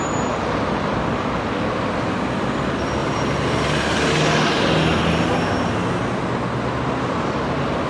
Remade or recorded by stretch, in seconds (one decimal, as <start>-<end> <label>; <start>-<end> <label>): 0.0-7.9 recorded